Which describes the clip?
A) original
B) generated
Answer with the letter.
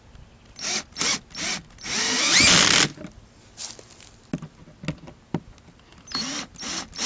A